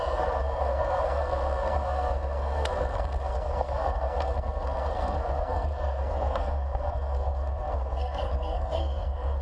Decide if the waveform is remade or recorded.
remade